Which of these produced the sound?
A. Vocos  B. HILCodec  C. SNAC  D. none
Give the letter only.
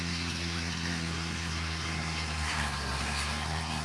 C